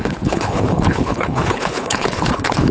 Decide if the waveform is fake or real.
fake